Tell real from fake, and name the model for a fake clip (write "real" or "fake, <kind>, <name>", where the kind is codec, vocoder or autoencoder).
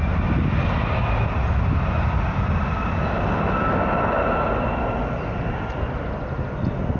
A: real